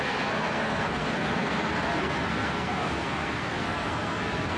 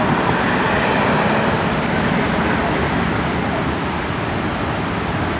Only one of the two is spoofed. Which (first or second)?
first